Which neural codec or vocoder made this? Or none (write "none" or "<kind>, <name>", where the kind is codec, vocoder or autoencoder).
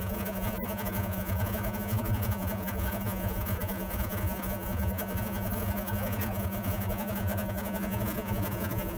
vocoder, Vocos